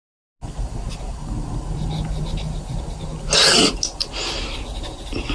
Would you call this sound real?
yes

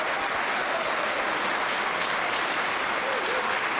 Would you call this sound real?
yes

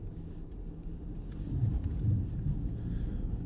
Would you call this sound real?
yes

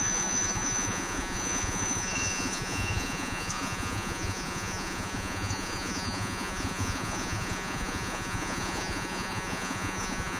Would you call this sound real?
no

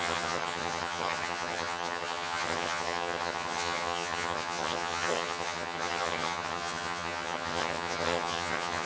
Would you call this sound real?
no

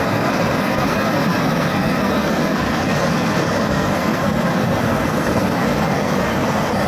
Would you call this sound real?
no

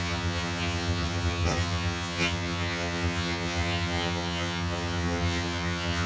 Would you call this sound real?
no